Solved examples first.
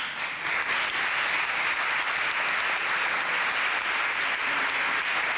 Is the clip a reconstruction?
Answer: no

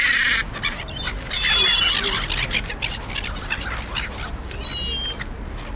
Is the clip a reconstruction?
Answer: no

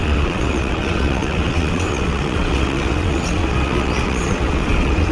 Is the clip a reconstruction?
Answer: yes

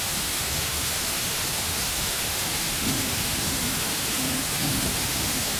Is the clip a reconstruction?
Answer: yes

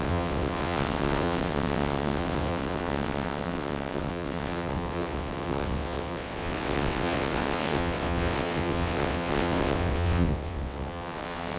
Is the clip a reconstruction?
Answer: yes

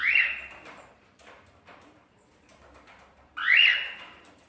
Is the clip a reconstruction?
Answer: yes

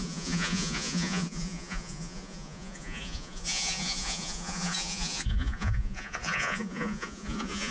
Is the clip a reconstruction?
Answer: yes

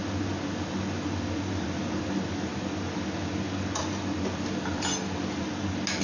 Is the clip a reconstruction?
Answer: no